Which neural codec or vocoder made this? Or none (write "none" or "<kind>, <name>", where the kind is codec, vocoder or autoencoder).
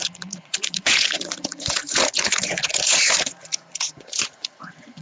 vocoder, Vocos